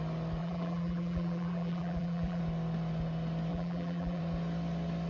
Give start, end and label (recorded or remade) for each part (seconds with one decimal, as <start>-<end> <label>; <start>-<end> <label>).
0.0-0.4 recorded; 0.4-2.4 remade; 2.4-3.5 recorded; 3.5-4.2 remade; 4.2-5.1 recorded